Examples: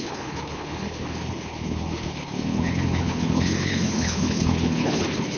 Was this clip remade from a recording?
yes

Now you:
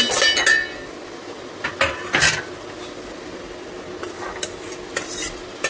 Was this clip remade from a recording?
no